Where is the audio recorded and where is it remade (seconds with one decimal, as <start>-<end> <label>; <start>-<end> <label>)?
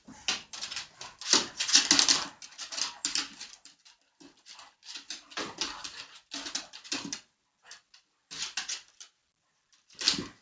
0.0-10.4 recorded